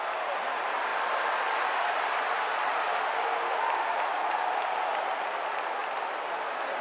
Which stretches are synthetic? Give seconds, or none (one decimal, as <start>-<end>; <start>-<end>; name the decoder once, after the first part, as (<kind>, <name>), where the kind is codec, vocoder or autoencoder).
none